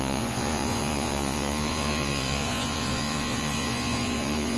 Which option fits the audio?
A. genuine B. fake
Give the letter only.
B